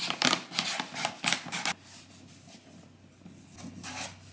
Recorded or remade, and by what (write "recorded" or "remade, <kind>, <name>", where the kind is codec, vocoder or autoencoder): recorded